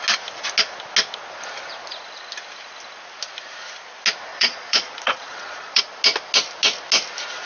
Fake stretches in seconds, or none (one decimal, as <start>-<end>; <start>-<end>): 4.3-5.8